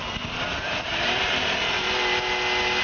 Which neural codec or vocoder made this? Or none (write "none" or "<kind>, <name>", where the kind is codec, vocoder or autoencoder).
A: none